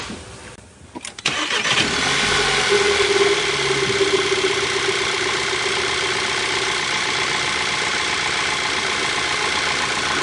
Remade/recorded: recorded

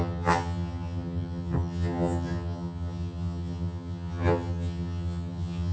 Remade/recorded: remade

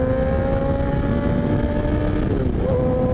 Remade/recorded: recorded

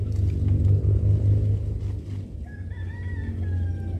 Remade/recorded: recorded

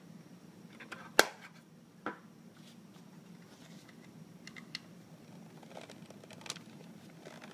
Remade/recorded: recorded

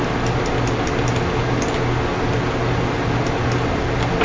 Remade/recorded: recorded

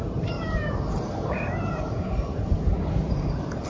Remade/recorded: remade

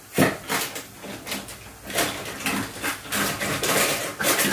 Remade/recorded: recorded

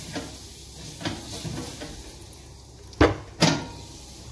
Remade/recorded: recorded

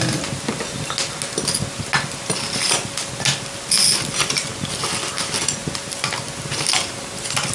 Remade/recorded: recorded